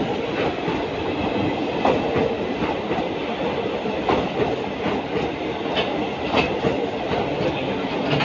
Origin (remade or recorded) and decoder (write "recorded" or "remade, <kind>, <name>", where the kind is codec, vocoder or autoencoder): recorded